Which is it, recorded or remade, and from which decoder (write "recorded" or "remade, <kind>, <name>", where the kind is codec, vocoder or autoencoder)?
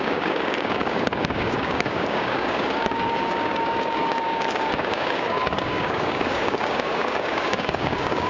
remade, codec, DAC